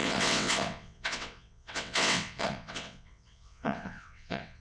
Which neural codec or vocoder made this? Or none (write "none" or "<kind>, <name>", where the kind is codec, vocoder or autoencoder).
vocoder, WaveNeXt